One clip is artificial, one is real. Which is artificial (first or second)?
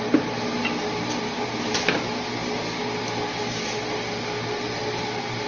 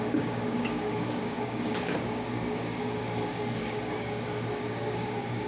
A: second